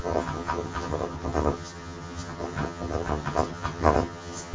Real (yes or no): no